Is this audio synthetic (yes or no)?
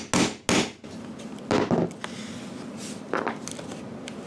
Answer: no